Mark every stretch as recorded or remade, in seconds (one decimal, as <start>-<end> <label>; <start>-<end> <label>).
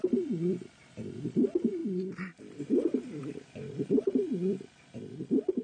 0.0-3.2 recorded; 3.2-4.1 remade; 4.1-5.6 recorded